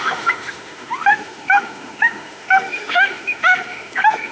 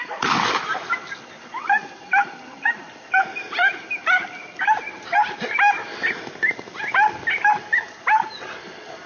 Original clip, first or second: second